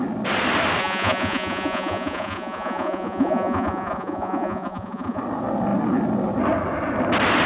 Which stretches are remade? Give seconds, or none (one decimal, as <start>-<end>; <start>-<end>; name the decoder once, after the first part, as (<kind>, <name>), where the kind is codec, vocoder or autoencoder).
0.8-5.2 (vocoder, Vocos)